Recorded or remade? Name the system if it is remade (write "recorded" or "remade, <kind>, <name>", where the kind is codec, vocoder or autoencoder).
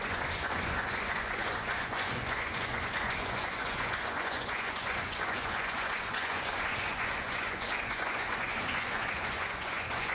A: remade, vocoder, Vocos